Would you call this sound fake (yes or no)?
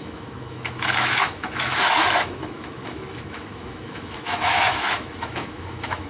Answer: yes